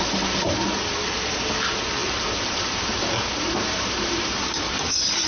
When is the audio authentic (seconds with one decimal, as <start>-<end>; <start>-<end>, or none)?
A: 0.0-0.8; 1.4-2.0